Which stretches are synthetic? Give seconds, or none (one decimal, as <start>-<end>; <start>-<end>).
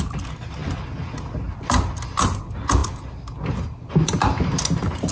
none